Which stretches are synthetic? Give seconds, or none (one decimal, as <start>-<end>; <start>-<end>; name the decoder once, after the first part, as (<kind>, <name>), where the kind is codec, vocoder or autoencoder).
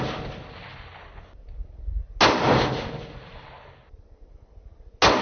none